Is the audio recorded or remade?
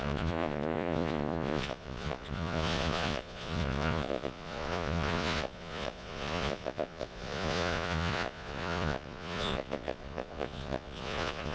remade